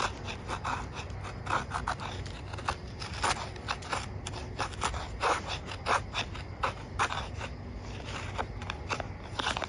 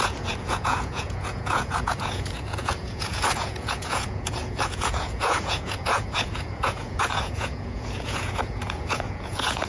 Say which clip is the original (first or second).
first